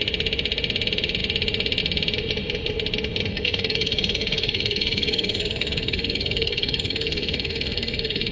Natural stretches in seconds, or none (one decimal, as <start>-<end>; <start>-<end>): 0.0-3.3